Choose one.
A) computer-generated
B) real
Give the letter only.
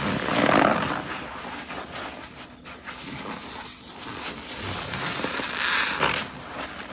B